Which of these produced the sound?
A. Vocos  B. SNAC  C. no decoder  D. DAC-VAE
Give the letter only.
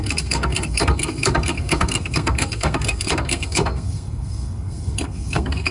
B